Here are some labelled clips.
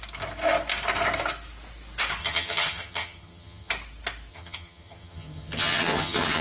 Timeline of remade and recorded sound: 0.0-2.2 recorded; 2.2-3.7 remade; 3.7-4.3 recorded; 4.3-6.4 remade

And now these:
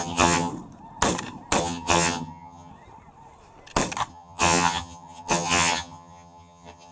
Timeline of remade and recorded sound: 0.0-0.5 remade; 0.5-1.6 recorded; 1.6-2.7 remade; 2.7-4.1 recorded; 4.1-6.9 remade

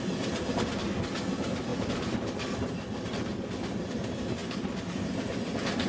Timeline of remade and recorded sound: 0.0-5.9 recorded

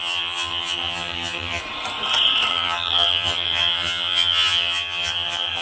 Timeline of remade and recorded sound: 0.0-1.6 remade; 1.6-2.5 recorded; 2.5-5.6 remade

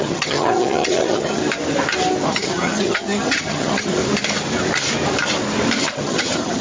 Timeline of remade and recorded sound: 0.0-1.4 remade; 1.4-2.3 recorded; 2.3-4.0 remade; 4.0-5.8 recorded; 5.8-6.6 remade